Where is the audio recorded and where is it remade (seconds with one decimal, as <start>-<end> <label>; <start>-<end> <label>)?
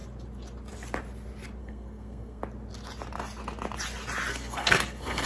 0.0-1.6 recorded; 1.6-2.4 remade; 2.4-4.3 recorded; 4.3-5.3 remade